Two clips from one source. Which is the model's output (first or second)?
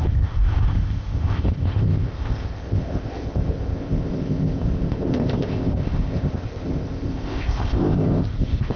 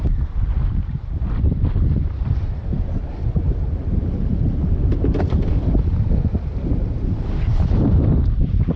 first